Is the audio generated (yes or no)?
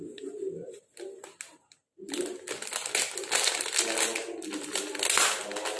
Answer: no